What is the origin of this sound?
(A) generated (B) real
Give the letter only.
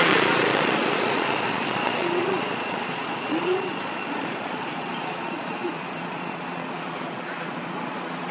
A